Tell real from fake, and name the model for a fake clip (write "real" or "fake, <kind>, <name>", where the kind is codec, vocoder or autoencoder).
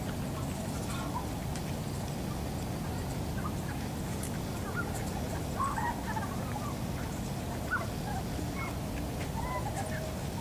real